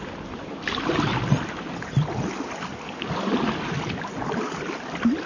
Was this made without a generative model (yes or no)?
yes